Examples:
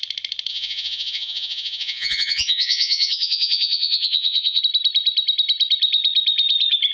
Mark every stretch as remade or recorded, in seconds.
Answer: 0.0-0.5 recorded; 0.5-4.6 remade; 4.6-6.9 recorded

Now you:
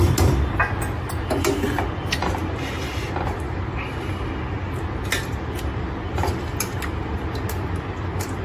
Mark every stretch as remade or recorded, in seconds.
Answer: 0.0-8.4 recorded

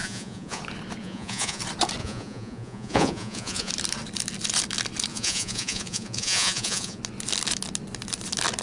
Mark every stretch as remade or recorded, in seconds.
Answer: 0.0-0.6 remade; 0.6-1.0 recorded; 1.0-1.6 remade; 1.6-2.0 recorded; 2.0-3.7 remade; 3.7-5.1 recorded; 5.1-7.0 remade; 7.0-8.6 recorded

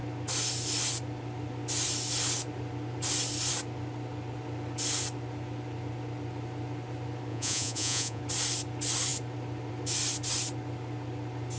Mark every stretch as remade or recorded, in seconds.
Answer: 0.0-7.3 recorded; 7.3-8.2 remade; 8.2-11.6 recorded

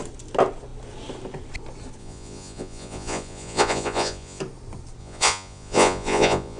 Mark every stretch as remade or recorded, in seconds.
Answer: 0.0-2.0 recorded; 2.0-4.4 remade; 4.4-5.0 recorded; 5.0-6.6 remade